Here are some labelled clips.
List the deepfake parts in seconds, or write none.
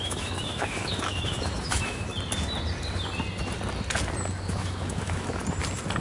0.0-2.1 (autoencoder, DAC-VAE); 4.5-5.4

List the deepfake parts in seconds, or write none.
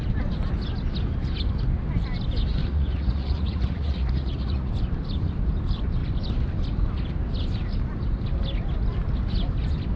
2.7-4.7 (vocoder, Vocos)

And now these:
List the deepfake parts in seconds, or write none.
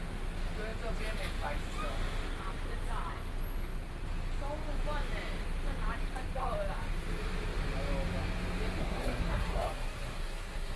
8.8-10.8 (codec, SNAC)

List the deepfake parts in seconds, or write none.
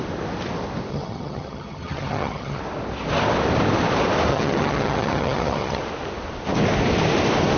0.9-2.6 (vocoder, HiFi-GAN); 4.3-5.8